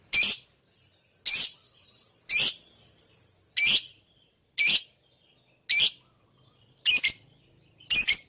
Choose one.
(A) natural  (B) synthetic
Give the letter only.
A